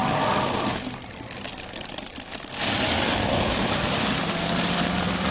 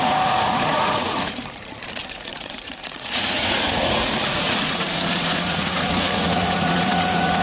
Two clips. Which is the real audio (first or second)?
first